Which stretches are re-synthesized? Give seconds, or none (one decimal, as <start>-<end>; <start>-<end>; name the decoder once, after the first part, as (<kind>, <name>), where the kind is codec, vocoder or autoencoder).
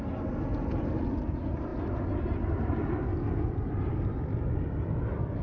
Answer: none